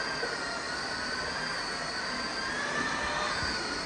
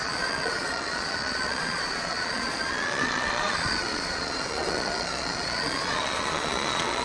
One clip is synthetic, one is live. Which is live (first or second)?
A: first